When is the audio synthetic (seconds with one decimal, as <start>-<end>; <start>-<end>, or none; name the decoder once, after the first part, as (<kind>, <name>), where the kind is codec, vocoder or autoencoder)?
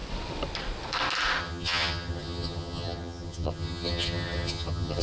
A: 1.4-5.0 (vocoder, HiFi-GAN)